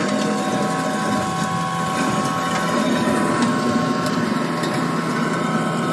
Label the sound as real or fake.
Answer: real